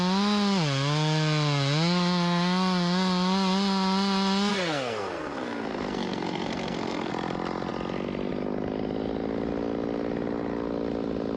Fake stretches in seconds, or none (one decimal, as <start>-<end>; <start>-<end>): 4.5-7.1